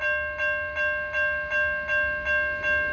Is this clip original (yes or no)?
yes